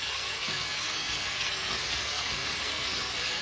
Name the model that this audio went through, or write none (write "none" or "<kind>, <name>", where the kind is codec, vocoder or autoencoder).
codec, SNAC